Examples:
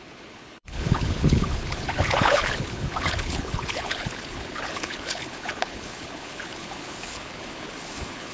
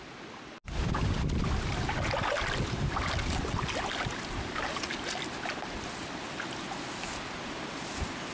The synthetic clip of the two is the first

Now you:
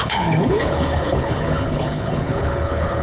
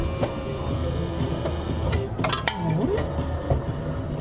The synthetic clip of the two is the first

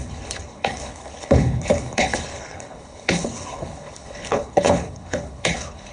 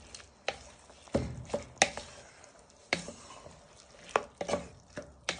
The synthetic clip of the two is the first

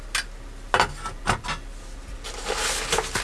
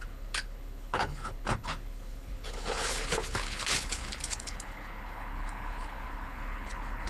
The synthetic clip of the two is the second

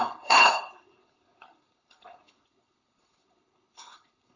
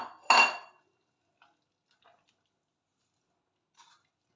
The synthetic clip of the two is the first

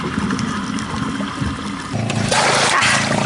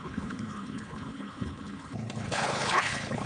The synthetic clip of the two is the second